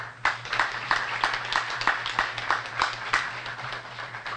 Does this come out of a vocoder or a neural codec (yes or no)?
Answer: no